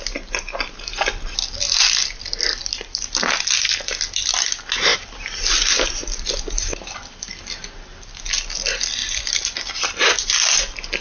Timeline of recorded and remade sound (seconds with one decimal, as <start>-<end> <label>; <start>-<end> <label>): 0.0-2.3 recorded; 2.3-3.8 remade; 3.8-4.9 recorded; 4.9-6.4 remade; 6.4-9.0 recorded; 9.0-10.5 remade; 10.5-11.0 recorded